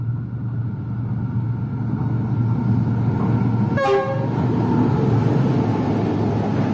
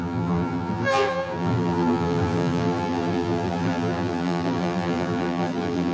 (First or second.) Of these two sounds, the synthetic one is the second